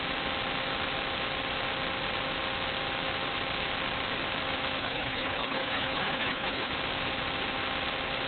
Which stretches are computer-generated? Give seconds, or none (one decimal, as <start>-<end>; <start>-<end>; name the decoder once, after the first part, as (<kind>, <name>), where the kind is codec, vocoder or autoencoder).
4.8-6.7 (codec, HILCodec)